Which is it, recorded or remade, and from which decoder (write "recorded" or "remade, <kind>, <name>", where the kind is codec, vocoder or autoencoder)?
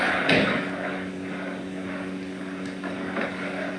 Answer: remade, codec, DAC